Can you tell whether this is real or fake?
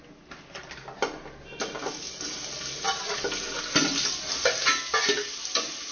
real